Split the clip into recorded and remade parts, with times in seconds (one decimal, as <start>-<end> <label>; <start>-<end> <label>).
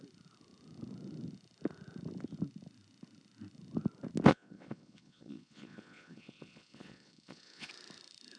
0.0-4.3 recorded; 4.3-7.7 remade; 7.7-8.4 recorded